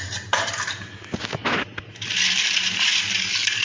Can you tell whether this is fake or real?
real